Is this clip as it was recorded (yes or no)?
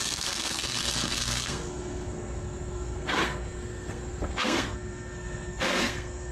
no